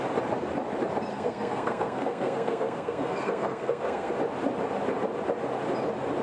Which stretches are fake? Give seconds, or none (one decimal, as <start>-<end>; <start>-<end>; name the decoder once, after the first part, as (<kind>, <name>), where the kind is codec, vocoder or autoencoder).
1.1-4.1 (codec, SNAC)